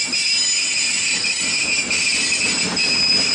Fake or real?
real